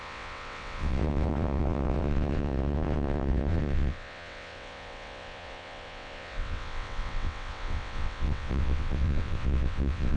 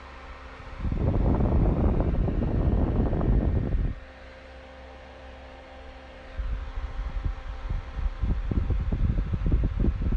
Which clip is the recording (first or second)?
second